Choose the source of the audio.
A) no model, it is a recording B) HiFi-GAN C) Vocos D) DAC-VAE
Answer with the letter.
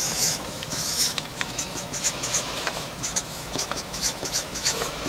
D